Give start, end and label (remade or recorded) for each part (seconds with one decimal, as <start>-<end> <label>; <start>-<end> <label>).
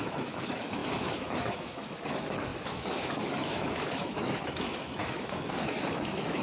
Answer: 0.0-6.4 remade